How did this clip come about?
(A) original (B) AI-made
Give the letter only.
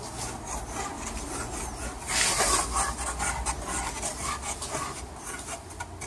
A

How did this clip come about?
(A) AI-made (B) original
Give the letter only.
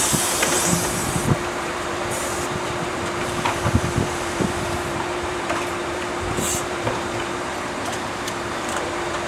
A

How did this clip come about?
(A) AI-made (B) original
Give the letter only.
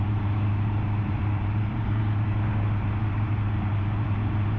A